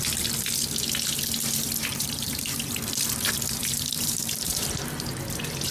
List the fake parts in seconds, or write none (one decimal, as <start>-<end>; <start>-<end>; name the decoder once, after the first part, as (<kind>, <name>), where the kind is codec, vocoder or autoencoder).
1.9-2.9 (vocoder, BigVGAN v2); 3.6-4.9